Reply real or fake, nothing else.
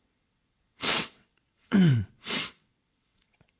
fake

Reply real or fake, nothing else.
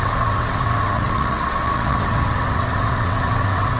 fake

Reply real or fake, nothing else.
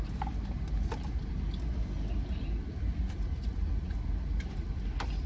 real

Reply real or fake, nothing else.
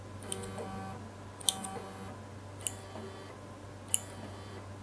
real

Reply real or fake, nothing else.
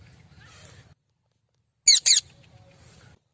real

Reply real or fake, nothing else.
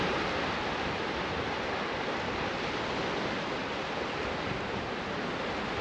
real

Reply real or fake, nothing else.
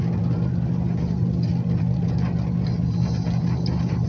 real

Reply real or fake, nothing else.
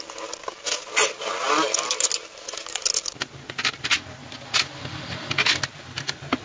real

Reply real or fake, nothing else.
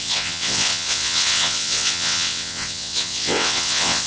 fake